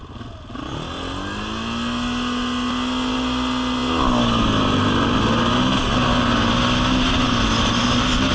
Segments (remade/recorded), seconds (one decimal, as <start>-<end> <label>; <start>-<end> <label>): 0.0-8.3 recorded